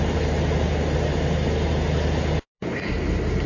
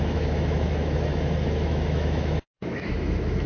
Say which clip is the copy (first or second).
second